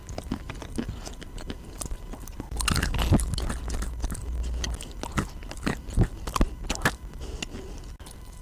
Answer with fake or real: real